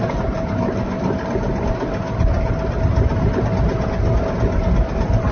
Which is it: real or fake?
real